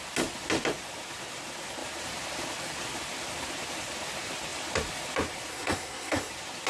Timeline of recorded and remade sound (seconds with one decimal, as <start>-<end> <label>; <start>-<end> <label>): 0.0-5.5 recorded; 5.5-6.3 remade; 6.3-6.7 recorded